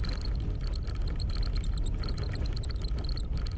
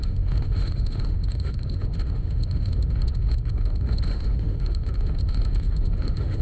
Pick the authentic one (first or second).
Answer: first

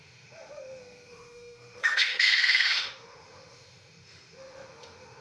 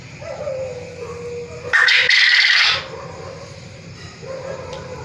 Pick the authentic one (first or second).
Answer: second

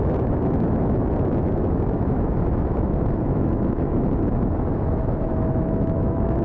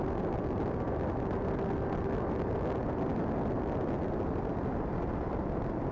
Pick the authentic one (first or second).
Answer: second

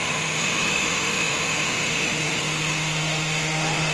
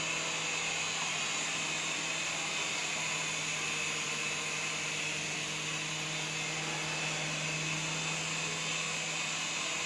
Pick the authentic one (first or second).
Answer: second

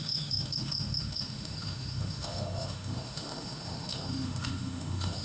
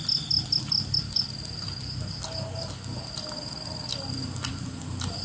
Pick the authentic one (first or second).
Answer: second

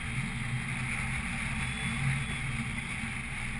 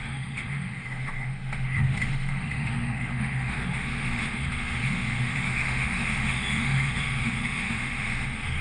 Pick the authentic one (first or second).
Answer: first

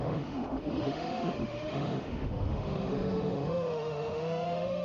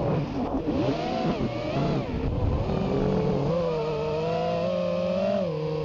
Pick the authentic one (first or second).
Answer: second